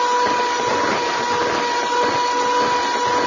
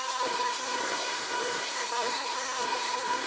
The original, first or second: first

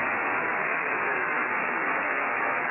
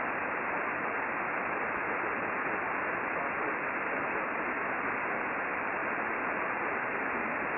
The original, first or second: second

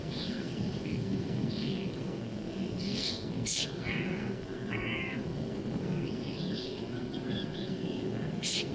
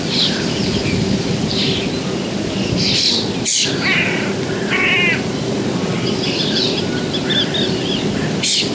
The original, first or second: second